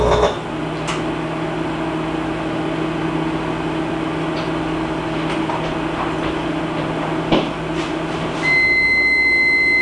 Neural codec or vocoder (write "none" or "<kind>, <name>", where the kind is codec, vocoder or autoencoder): none